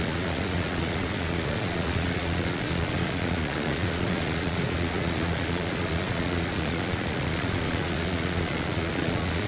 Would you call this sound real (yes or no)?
no